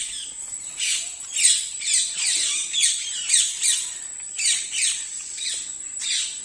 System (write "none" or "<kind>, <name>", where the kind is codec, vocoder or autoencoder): none